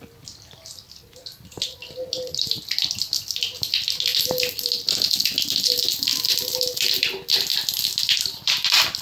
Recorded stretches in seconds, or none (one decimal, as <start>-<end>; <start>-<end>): 4.1-5.7; 7.5-8.2